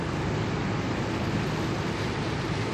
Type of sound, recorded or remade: recorded